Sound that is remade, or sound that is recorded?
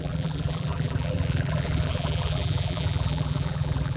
remade